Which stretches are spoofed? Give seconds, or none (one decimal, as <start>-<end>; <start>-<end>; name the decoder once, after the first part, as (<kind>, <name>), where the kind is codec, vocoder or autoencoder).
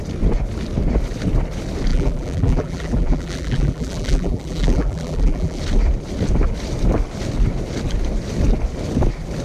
1.9-5.6 (vocoder, BigVGAN v2)